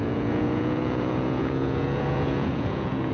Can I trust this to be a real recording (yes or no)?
no